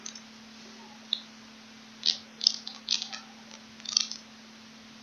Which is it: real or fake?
real